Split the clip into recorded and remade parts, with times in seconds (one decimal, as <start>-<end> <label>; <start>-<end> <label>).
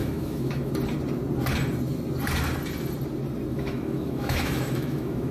0.0-0.7 remade; 0.7-3.5 recorded; 3.5-5.3 remade